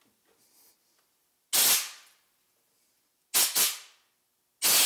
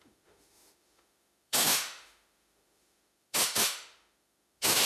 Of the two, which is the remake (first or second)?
second